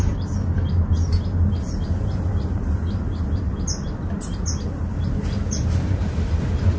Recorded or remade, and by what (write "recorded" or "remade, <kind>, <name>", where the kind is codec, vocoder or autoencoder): recorded